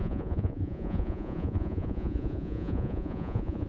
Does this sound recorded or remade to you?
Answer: remade